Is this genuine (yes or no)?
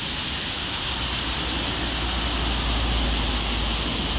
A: yes